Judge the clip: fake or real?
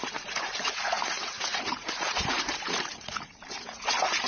fake